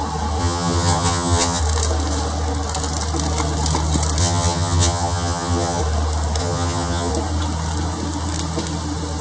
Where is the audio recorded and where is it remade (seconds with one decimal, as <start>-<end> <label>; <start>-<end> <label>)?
0.0-0.4 recorded; 0.4-1.6 remade; 1.6-4.2 recorded; 4.2-5.8 remade; 5.8-6.4 recorded; 6.4-7.1 remade; 7.1-9.2 recorded